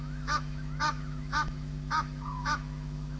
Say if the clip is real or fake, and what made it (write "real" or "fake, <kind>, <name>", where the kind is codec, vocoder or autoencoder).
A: fake, autoencoder, DAC-VAE